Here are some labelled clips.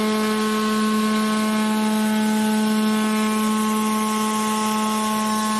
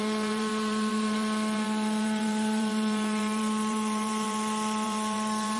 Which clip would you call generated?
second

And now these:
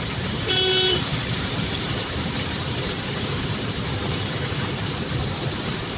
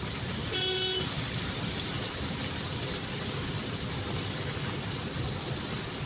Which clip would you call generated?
first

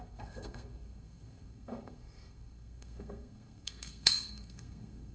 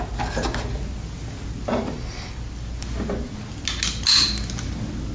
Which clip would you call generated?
first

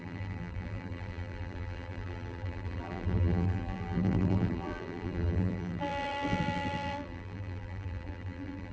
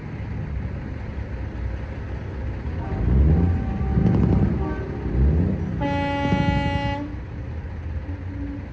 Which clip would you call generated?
first